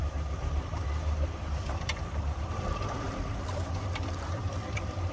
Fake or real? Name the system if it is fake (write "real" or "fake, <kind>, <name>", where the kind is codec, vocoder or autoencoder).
fake, vocoder, BigVGAN v2